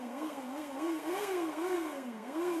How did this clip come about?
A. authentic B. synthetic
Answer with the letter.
B